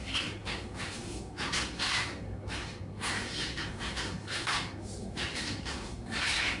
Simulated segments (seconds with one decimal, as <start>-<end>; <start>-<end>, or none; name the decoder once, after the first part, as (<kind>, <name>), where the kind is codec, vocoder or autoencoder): 0.0-6.6 (codec, SNAC)